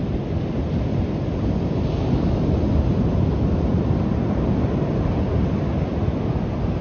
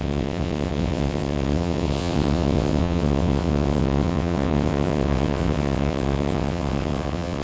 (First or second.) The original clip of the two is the first